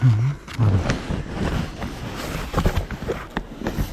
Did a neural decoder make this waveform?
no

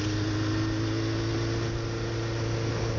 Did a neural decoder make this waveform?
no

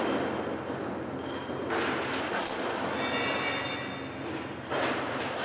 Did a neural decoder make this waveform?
no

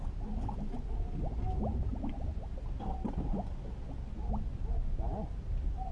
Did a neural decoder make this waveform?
no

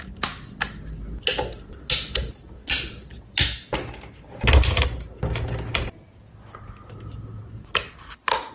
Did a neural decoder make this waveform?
no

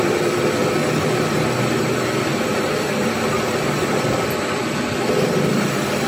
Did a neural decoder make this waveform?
no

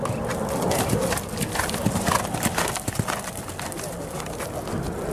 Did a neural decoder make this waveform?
no